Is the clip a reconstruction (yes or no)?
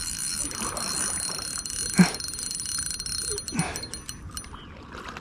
no